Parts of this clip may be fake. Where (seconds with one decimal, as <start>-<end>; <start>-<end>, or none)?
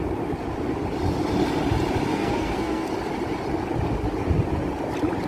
2.1-2.9